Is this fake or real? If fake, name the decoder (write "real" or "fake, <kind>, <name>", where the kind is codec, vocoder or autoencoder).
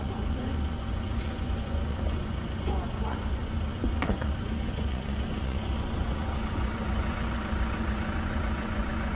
fake, vocoder, Vocos